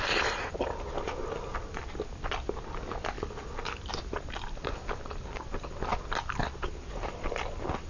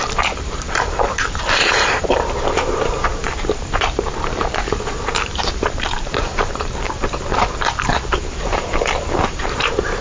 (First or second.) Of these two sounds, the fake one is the second